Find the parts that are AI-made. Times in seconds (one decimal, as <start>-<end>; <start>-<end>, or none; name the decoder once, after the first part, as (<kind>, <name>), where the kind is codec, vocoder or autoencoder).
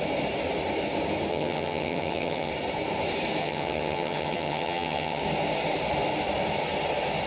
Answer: 1.3-2.5 (vocoder, HiFi-GAN); 3.4-5.2